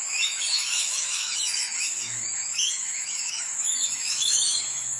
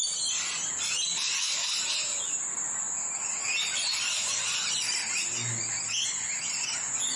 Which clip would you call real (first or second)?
second